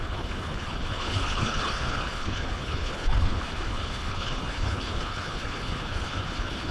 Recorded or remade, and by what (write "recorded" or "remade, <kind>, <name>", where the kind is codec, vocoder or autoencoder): remade, codec, HILCodec